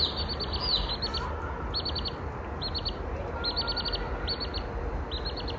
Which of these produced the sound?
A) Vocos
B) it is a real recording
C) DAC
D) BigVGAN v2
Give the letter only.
B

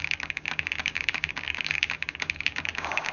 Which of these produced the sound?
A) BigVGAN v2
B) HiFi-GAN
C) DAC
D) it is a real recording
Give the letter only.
C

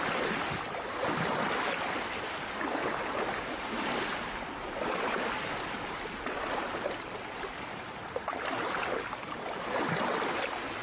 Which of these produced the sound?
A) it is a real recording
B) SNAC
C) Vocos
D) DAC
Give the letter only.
A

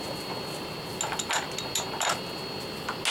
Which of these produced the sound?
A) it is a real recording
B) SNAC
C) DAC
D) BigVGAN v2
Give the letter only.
A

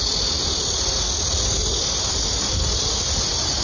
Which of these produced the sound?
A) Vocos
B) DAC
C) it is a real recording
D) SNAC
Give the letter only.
C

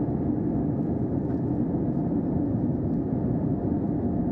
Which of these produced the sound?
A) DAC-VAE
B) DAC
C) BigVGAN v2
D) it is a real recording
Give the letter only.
D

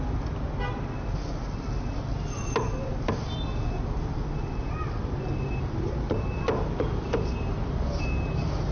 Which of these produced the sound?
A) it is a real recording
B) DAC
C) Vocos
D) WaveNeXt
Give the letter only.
A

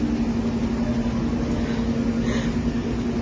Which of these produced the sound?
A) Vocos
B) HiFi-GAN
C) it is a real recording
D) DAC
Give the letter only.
C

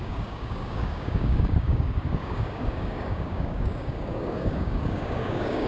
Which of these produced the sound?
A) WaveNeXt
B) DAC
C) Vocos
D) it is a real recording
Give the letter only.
B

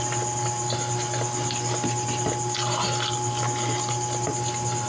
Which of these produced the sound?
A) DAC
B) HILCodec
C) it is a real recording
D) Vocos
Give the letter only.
C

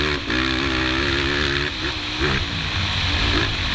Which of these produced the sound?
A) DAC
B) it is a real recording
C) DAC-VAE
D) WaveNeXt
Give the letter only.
B